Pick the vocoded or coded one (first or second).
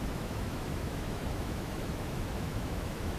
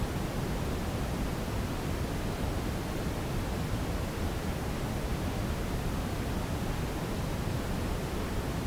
first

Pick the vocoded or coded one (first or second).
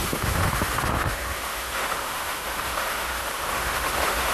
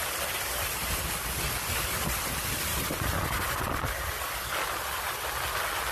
first